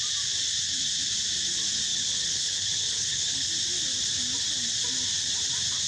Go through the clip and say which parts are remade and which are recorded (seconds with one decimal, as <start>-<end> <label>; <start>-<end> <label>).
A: 0.0-1.9 recorded; 1.9-3.5 remade; 3.5-5.9 recorded